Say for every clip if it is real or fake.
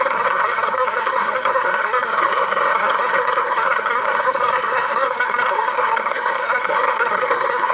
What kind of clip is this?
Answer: fake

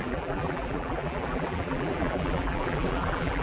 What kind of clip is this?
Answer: fake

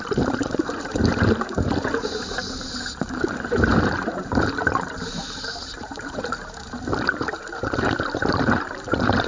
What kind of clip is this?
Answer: fake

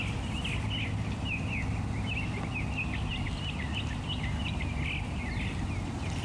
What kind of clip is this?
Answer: real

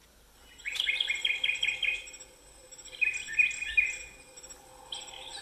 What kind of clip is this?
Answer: real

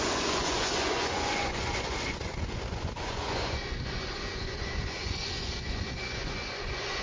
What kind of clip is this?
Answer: fake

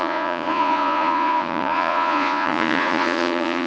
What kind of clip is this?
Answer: fake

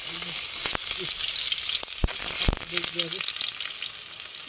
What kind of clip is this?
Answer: real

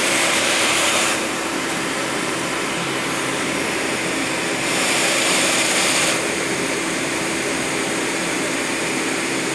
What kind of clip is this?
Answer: fake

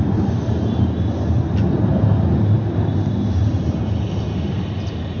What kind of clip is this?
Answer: real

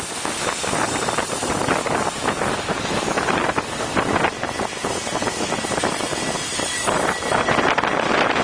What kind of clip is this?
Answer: real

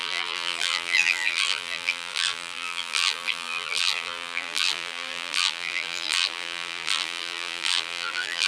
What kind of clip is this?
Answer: fake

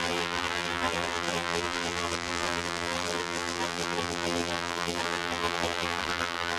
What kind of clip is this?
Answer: fake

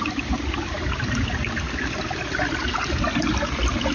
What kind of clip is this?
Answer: real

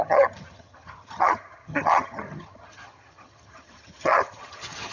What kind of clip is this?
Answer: fake